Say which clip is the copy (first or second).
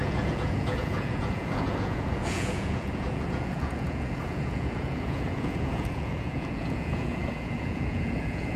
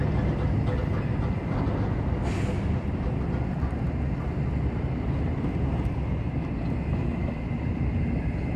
first